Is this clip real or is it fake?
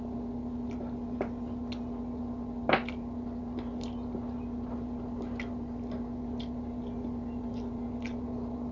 real